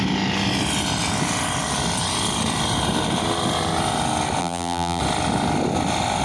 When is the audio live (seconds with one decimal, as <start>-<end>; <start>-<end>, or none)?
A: 0.0-4.4; 5.0-6.2